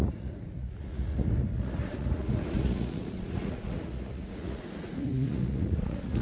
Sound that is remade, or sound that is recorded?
remade